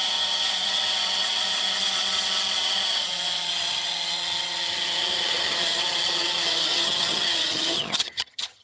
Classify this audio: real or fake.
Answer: fake